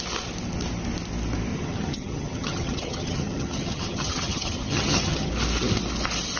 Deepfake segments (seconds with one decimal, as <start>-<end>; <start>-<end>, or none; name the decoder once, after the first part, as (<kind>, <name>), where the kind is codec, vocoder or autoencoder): 1.5-5.3 (vocoder, HiFi-GAN)